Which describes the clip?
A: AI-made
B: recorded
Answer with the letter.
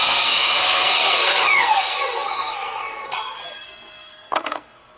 A